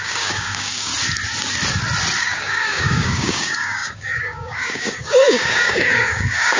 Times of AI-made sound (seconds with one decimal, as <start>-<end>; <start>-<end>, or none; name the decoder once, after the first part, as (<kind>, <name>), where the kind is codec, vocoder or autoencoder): 0.0-0.9 (codec, DAC); 2.2-6.6